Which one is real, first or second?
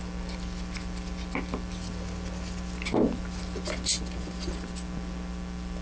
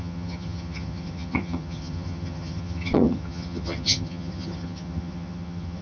first